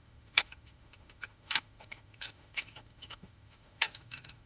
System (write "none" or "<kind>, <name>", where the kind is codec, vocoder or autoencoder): autoencoder, DAC-VAE